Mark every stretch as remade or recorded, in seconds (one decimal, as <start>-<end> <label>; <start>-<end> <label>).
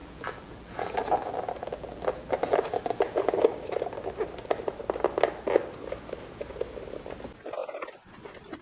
0.0-3.4 remade; 3.4-8.6 recorded